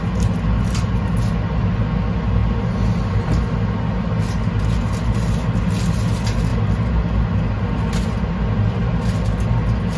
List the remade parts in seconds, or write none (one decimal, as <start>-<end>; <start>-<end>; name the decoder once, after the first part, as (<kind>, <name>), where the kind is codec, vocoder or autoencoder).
none